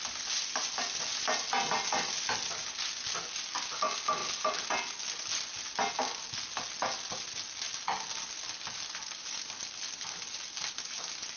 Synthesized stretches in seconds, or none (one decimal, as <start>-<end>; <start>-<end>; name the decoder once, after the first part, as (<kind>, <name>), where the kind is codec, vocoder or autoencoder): none